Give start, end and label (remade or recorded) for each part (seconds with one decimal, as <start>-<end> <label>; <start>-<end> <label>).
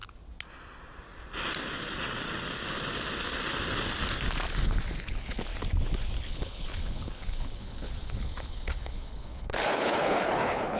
0.0-5.0 recorded; 5.0-5.5 remade; 5.5-6.2 recorded; 6.2-10.8 remade